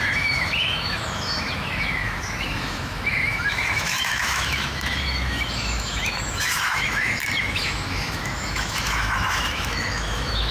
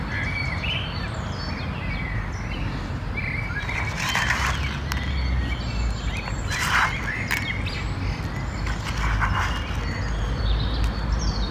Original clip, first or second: second